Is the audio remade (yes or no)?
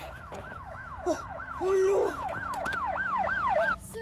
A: yes